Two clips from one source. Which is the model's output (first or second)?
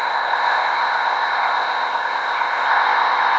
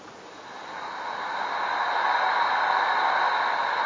first